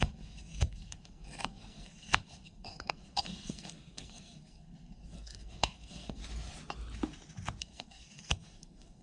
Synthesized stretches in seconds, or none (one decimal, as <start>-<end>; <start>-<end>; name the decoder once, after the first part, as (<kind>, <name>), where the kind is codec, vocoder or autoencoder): 0.0-6.2 (codec, SNAC); 7.6-9.0